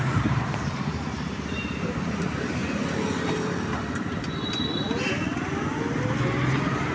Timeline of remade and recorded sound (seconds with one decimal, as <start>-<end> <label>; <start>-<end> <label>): 0.0-2.6 remade; 2.6-6.9 recorded